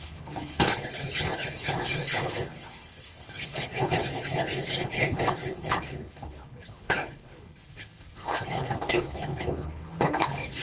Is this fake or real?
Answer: fake